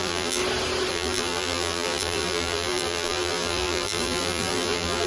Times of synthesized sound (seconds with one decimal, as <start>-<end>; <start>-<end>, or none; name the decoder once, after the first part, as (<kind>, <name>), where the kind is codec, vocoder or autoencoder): 0.0-0.4 (vocoder, BigVGAN v2); 0.9-5.1